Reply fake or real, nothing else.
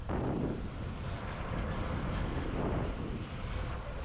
real